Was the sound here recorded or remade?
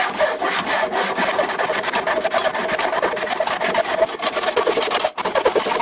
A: recorded